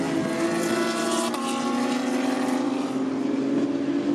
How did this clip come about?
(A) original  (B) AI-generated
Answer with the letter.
A